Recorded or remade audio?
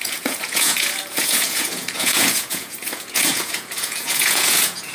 remade